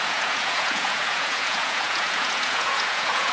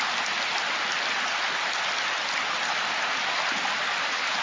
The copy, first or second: first